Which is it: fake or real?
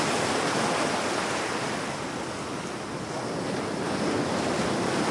real